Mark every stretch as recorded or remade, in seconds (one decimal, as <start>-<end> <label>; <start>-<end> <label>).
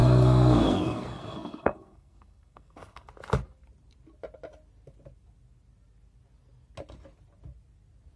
0.0-3.1 remade; 3.1-8.2 recorded